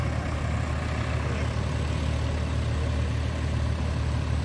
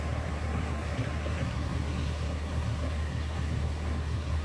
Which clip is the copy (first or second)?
second